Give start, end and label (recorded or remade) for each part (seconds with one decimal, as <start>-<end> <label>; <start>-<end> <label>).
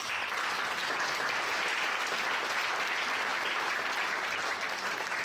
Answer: 0.0-3.3 recorded; 3.3-3.9 remade; 3.9-5.2 recorded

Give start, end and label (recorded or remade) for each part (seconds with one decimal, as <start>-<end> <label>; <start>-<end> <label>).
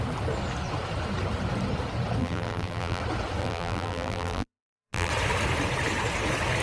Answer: 0.0-2.2 recorded; 2.2-3.0 remade; 3.0-3.4 recorded; 3.4-5.1 remade; 5.1-6.6 recorded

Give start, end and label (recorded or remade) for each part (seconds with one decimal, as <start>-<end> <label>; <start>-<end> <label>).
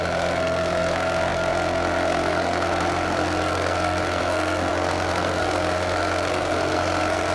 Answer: 0.0-7.3 remade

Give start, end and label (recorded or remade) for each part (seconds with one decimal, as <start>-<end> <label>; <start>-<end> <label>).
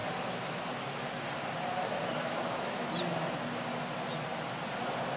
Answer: 0.0-2.2 recorded; 2.2-2.9 remade; 2.9-5.2 recorded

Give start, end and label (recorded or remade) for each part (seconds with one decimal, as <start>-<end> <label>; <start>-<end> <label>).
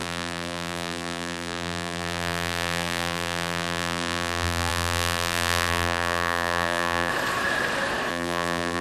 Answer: 0.0-7.1 remade; 7.1-8.1 recorded; 8.1-8.8 remade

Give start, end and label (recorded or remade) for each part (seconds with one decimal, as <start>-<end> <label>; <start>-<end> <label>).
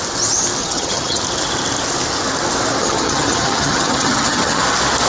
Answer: 0.0-0.6 recorded; 0.6-1.2 remade; 1.2-2.8 recorded; 2.8-4.6 remade; 4.6-5.1 recorded